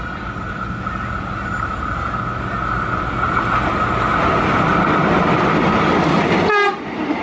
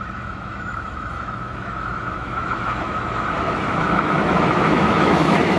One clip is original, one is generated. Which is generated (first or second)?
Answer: second